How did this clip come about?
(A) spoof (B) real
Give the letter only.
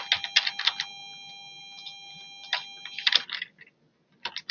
B